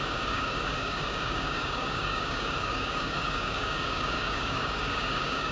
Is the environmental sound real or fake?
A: fake